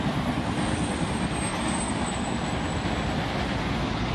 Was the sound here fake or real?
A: real